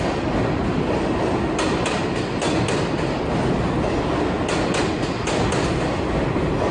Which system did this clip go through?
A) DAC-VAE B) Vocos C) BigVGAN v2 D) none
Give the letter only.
D